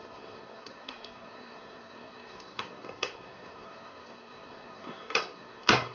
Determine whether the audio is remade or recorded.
remade